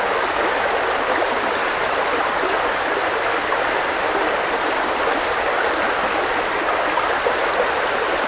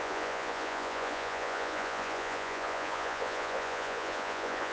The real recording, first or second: first